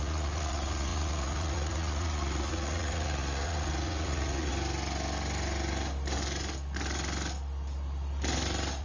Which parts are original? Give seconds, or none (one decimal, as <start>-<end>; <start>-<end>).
4.5-8.8